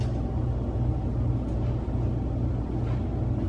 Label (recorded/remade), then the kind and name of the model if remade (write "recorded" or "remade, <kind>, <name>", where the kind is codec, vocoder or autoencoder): recorded